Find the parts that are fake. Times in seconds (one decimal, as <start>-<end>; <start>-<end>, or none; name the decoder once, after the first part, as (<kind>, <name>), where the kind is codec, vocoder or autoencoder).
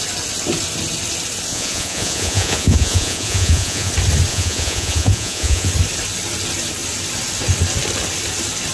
1.5-3.9 (vocoder, Vocos); 4.3-5.7